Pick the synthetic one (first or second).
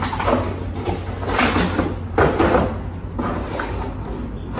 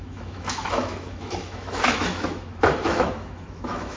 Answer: second